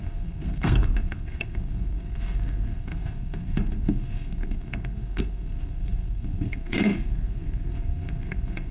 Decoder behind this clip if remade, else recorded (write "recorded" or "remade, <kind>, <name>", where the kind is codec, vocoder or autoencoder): remade, codec, SNAC